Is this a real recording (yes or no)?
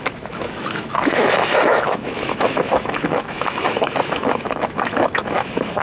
no